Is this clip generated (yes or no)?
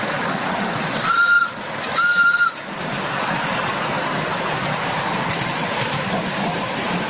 no